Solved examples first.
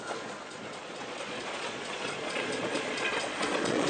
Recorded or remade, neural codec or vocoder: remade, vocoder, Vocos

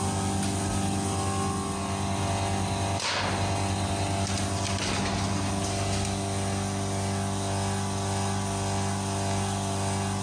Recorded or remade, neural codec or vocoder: recorded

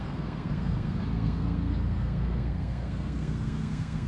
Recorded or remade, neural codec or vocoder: remade, codec, SNAC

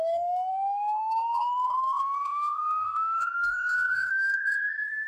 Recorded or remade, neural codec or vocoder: remade, codec, DAC